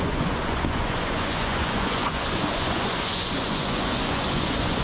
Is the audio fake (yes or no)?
yes